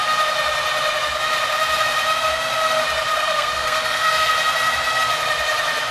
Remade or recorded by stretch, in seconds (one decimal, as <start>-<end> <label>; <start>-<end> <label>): 0.0-3.1 recorded; 3.1-4.3 remade; 4.3-5.9 recorded

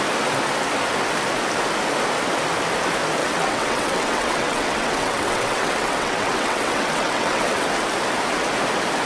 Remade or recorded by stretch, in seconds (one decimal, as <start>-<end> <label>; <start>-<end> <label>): 0.0-3.2 recorded; 3.2-7.7 remade; 7.7-9.1 recorded

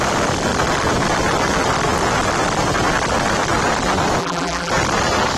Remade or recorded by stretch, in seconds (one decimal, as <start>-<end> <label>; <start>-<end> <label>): 0.0-4.2 recorded; 4.2-4.7 remade; 4.7-5.4 recorded

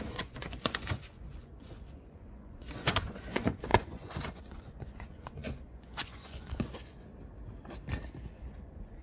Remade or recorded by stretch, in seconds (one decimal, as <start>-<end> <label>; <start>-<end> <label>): 0.0-7.1 remade; 7.1-8.3 recorded; 8.3-9.0 remade

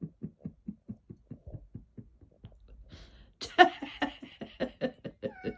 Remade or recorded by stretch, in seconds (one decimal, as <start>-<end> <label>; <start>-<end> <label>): 0.0-5.6 recorded

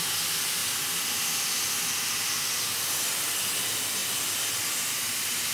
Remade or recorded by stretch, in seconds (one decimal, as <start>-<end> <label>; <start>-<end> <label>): 0.0-5.5 recorded